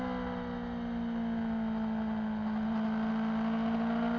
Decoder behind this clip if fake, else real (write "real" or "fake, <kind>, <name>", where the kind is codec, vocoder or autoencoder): real